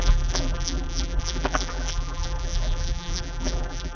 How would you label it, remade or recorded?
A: remade